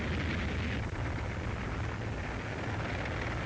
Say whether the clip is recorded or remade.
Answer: recorded